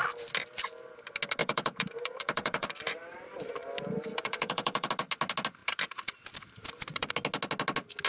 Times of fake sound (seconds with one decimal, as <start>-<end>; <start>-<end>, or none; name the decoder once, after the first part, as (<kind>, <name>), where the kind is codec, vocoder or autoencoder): 1.4-4.9 (vocoder, BigVGAN v2); 5.6-7.1